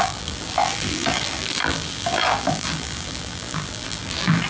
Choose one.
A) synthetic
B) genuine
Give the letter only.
A